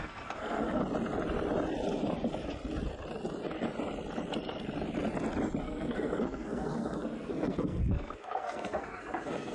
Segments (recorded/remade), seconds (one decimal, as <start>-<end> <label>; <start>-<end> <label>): 0.0-0.8 remade; 0.8-5.6 recorded; 5.6-9.5 remade